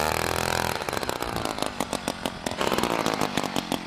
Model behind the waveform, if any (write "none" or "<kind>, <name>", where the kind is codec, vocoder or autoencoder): none